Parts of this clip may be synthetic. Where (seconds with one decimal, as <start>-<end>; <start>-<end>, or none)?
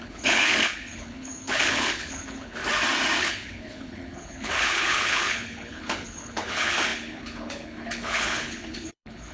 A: 0.0-2.6; 3.2-9.3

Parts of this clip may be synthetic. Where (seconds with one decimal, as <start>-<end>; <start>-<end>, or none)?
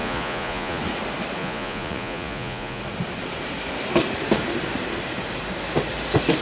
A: 0.0-0.8; 1.4-2.8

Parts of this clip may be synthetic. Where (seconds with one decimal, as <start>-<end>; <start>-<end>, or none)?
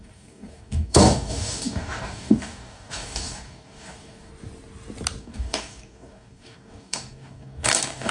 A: 0.0-4.3; 5.2-8.1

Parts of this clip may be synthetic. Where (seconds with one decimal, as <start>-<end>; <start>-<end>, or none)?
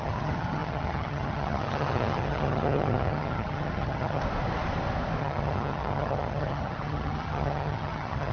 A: 0.0-4.2; 5.2-8.3